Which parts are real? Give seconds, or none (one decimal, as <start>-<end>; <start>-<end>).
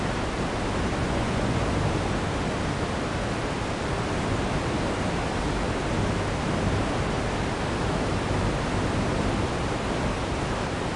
0.0-1.0; 1.6-11.0